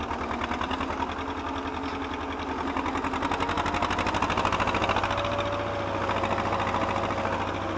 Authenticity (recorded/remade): recorded